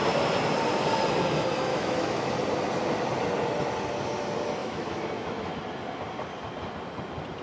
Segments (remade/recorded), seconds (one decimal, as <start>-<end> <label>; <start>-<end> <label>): 0.0-1.7 recorded; 1.7-2.3 remade; 2.3-4.6 recorded; 4.6-5.6 remade; 5.6-7.4 recorded